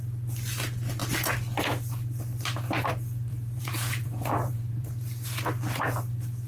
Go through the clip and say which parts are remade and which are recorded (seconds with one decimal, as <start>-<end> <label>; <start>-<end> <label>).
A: 0.0-3.3 recorded; 3.3-4.9 remade; 4.9-6.5 recorded

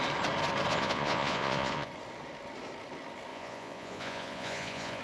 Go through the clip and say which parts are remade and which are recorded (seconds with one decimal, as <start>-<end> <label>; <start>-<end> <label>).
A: 0.0-0.7 recorded; 0.7-1.9 remade; 1.9-3.3 recorded; 3.3-5.0 remade

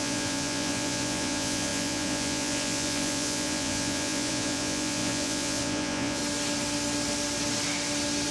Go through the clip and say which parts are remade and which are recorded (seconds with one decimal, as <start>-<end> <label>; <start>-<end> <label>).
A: 0.0-6.2 remade; 6.2-8.3 recorded

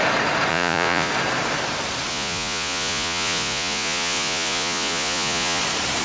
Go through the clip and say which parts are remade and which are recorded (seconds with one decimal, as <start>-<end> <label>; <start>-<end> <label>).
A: 0.0-0.5 recorded; 0.5-1.1 remade; 1.1-2.1 recorded; 2.1-5.6 remade; 5.6-6.0 recorded

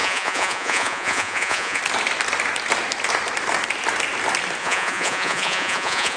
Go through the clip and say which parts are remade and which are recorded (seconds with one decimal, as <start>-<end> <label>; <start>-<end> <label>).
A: 0.0-1.8 remade; 1.8-4.6 recorded; 4.6-6.2 remade

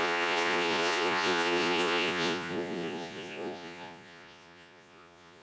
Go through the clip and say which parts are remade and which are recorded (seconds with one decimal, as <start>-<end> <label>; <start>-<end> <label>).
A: 0.0-5.4 remade

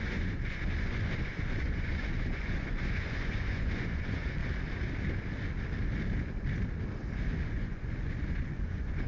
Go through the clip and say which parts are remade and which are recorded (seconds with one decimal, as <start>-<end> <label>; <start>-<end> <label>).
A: 0.0-4.4 remade; 4.4-7.4 recorded; 7.4-9.1 remade